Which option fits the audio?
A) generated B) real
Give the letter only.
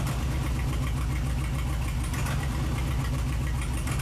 B